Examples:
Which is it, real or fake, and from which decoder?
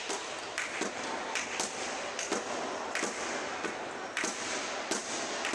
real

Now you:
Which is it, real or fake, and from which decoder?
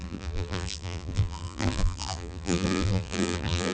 fake, vocoder, BigVGAN v2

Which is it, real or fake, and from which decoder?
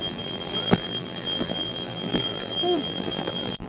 fake, vocoder, BigVGAN v2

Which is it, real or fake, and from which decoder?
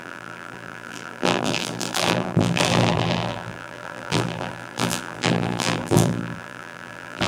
fake, vocoder, BigVGAN v2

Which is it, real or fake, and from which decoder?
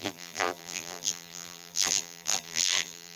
fake, vocoder, BigVGAN v2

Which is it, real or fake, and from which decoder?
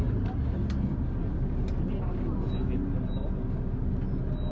real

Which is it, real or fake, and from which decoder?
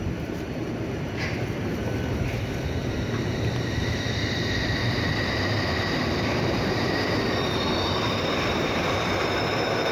fake, vocoder, BigVGAN v2